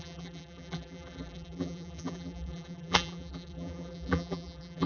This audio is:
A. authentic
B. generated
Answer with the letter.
B